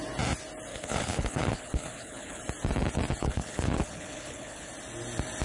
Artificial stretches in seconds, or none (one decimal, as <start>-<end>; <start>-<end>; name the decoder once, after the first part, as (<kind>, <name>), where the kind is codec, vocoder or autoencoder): 0.7-2.4 (codec, HILCodec); 3.2-4.7